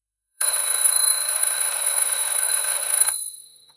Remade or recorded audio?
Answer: remade